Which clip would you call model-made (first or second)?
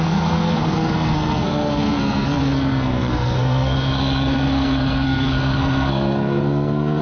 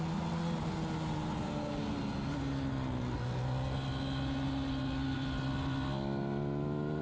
first